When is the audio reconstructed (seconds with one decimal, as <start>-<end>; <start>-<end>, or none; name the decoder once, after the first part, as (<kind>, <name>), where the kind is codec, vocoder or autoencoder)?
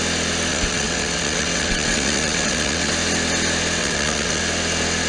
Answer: 0.5-2.9 (vocoder, WaveNeXt); 3.8-4.4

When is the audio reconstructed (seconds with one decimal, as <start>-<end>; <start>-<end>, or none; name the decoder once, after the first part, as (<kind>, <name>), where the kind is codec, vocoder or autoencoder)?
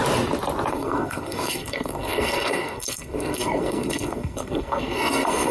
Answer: 0.7-5.5 (codec, SNAC)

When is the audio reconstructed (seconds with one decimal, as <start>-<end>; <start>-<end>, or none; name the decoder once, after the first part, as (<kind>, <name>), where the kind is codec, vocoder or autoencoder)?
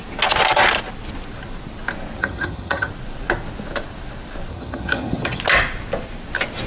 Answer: 2.2-2.9 (vocoder, HiFi-GAN); 4.5-5.4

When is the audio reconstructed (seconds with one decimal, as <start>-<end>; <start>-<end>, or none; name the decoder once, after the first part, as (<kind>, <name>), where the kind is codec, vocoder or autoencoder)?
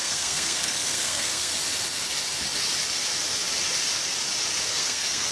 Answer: 0.0-1.5 (codec, SNAC); 4.7-5.3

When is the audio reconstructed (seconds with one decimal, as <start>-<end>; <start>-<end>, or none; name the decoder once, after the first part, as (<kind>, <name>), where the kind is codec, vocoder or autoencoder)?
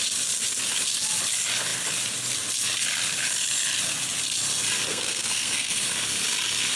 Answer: 4.9-5.8 (codec, SNAC)